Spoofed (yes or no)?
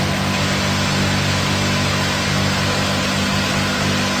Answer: no